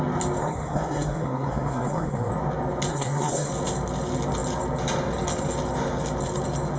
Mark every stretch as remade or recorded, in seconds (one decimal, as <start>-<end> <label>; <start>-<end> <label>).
0.0-0.4 recorded; 0.4-2.3 remade; 2.3-2.9 recorded; 2.9-3.5 remade; 3.5-6.8 recorded